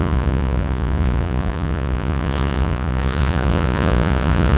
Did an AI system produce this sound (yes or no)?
yes